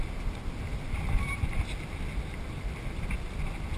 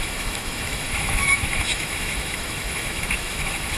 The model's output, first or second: second